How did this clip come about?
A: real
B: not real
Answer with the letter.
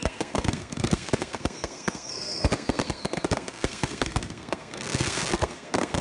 B